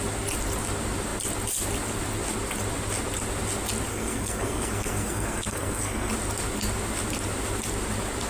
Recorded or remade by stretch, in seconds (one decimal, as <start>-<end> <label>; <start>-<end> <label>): 0.0-3.9 recorded; 3.9-6.1 remade; 6.1-8.3 recorded